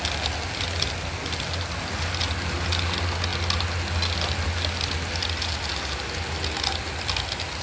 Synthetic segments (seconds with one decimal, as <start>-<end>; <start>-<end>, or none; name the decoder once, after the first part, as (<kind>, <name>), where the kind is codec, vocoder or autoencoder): none